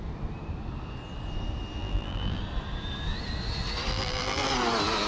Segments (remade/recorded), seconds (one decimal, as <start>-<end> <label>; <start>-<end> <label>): 0.0-1.8 recorded; 1.8-2.4 remade; 2.4-3.9 recorded; 3.9-4.5 remade; 4.5-5.1 recorded